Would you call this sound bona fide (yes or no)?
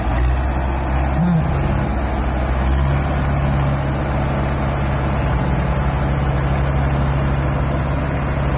yes